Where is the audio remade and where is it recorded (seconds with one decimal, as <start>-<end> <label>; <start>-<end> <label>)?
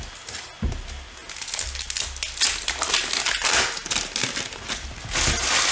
0.0-5.7 recorded